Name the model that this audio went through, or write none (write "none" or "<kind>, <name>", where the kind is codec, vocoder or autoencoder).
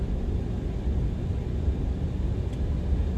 none